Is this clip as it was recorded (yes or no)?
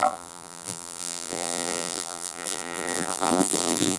no